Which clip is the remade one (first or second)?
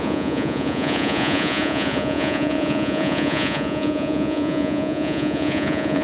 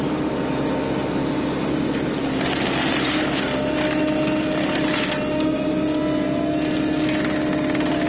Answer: first